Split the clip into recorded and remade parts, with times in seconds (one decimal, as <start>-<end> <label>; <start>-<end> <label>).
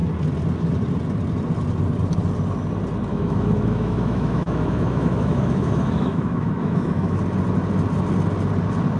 0.0-3.1 recorded; 3.1-7.2 remade; 7.2-9.0 recorded